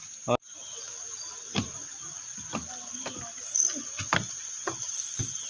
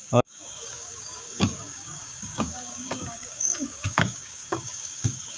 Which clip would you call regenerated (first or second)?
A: second